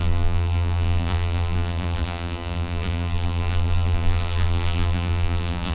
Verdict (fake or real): fake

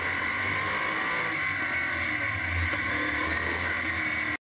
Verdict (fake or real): real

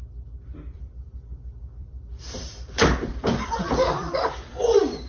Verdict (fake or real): fake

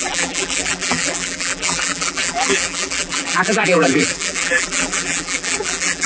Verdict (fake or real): fake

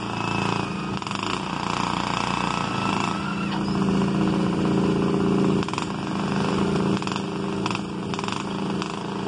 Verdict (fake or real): real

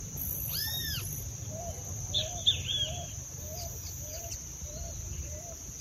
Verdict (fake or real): fake